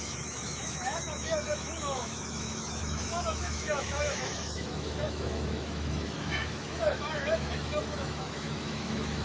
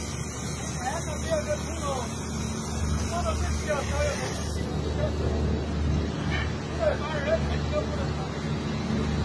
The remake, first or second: first